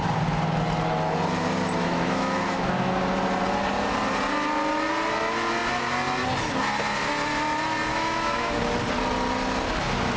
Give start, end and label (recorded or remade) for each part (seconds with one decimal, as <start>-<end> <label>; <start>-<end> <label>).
0.0-1.8 recorded; 1.8-2.7 remade; 2.7-7.9 recorded; 7.9-8.6 remade; 8.6-10.2 recorded

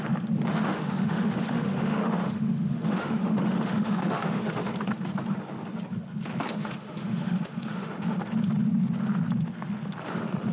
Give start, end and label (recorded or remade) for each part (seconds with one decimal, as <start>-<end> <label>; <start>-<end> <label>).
0.0-0.5 recorded; 0.5-4.7 remade; 4.7-6.5 recorded; 6.5-8.2 remade; 8.2-10.5 recorded

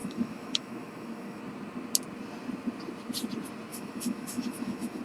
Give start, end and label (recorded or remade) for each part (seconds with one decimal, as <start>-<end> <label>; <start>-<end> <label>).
0.0-1.4 remade; 1.4-3.7 recorded; 3.7-5.0 remade

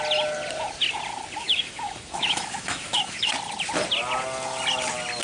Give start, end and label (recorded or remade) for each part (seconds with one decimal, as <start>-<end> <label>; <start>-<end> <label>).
0.0-1.4 recorded; 1.4-3.3 remade; 3.3-5.2 recorded